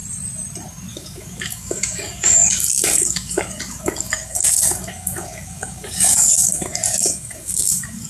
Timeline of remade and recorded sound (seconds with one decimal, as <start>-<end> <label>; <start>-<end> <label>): 0.0-0.9 recorded; 0.9-8.1 remade